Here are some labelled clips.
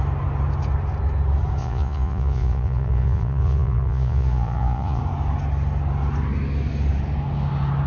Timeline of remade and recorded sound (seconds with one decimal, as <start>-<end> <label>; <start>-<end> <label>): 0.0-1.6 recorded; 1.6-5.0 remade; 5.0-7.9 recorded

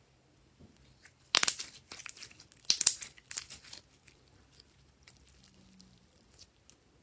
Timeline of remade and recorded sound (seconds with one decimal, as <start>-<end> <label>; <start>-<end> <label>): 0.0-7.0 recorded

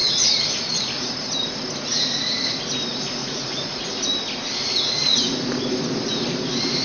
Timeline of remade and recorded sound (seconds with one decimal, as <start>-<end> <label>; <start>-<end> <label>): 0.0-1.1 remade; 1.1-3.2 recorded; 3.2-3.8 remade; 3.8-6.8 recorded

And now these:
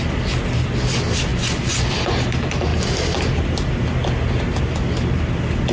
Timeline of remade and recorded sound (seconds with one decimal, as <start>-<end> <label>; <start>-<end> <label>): 0.0-1.3 recorded; 1.3-1.9 remade; 1.9-5.7 recorded

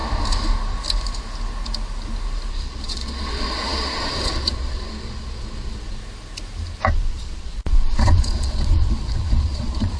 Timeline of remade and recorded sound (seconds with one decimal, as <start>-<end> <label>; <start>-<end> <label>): 0.0-2.5 recorded; 2.5-6.0 remade; 6.0-6.9 recorded; 6.9-10.0 remade

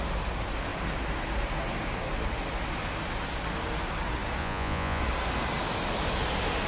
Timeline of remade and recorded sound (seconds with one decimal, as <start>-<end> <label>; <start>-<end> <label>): 0.0-4.4 recorded; 4.4-5.0 remade; 5.0-6.7 recorded

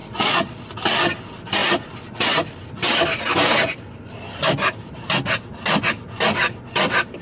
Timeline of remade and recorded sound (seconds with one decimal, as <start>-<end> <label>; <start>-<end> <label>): 0.0-0.6 remade; 0.6-7.2 recorded

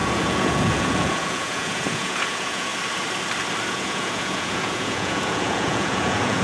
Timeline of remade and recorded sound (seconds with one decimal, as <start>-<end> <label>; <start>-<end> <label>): 0.0-2.7 remade; 2.7-3.7 recorded; 3.7-6.4 remade